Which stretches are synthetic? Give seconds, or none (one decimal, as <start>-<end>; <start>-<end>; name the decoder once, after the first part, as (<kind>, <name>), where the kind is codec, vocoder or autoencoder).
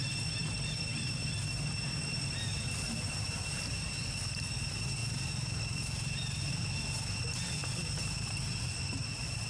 0.4-3.1 (vocoder, BigVGAN v2); 7.6-9.5